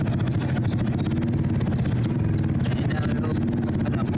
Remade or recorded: recorded